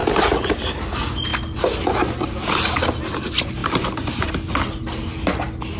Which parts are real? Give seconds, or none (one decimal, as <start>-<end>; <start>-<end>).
0.9-3.6; 4.3-5.8

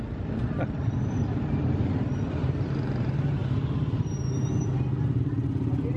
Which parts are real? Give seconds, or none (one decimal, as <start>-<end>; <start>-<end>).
0.0-0.4; 2.7-6.0

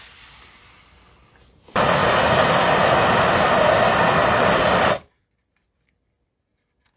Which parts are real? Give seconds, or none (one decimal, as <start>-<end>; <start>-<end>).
0.0-7.0

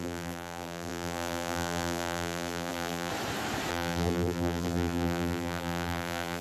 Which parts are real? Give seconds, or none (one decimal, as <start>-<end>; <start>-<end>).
3.1-3.7

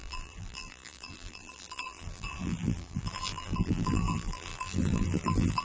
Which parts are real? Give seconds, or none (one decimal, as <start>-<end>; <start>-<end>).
none

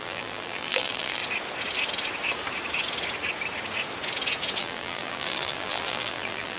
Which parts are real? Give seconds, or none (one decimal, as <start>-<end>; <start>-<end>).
1.2-4.6

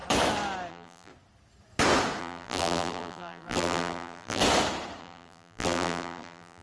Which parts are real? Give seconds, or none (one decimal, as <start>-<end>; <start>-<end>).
0.0-0.7; 1.1-2.2; 4.4-5.0

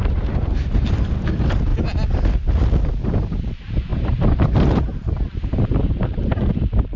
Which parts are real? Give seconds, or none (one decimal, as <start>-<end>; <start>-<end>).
1.7-2.9